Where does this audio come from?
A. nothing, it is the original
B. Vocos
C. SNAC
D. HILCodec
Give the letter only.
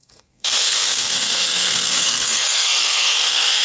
C